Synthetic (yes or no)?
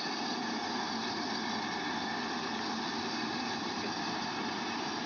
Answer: no